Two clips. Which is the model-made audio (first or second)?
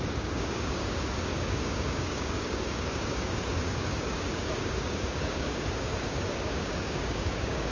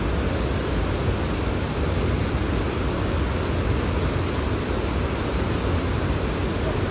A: first